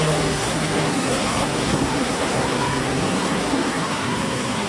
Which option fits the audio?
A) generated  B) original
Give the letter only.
A